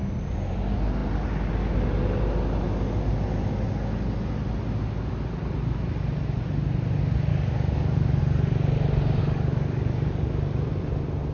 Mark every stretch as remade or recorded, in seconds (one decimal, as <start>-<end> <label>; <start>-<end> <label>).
0.0-7.3 recorded; 7.3-8.2 remade; 8.2-9.2 recorded; 9.2-10.3 remade; 10.3-11.3 recorded